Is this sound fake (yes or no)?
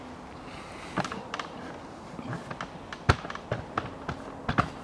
no